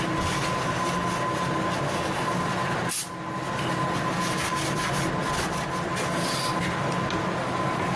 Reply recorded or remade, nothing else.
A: recorded